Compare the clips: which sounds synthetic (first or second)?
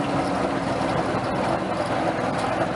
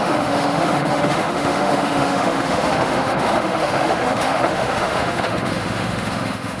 second